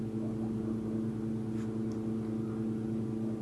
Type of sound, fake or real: real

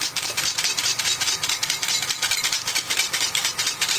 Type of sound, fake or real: fake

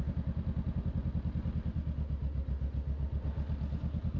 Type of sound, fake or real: real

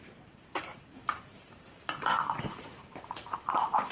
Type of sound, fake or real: fake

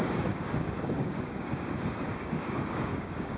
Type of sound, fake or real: fake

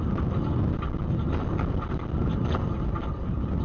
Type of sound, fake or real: real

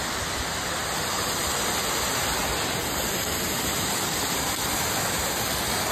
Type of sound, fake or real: real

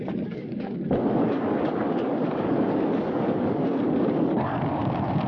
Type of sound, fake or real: fake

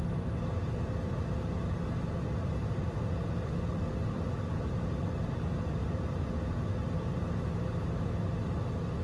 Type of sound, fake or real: real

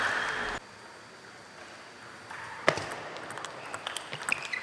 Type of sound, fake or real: real